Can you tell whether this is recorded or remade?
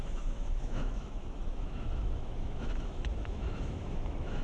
remade